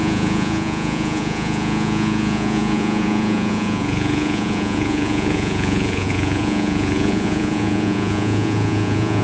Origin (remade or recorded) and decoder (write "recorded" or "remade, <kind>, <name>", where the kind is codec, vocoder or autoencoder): remade, vocoder, Vocos